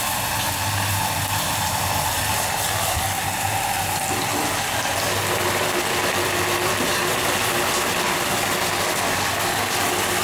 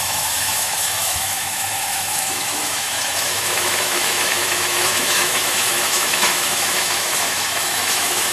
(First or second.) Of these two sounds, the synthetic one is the second